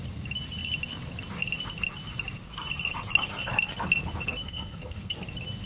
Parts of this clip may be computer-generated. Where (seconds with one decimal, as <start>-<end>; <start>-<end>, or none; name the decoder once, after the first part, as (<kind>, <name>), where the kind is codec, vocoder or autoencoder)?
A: 4.4-5.3 (codec, SNAC)